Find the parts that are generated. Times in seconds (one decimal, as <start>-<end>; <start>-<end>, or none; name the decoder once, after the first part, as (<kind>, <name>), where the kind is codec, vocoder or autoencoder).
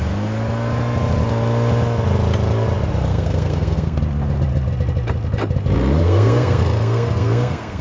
3.1-4.0 (codec, SNAC); 6.0-7.8